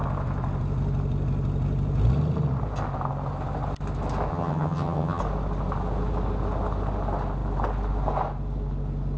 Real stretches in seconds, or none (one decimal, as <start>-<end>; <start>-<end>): 0.0-4.3; 5.2-9.2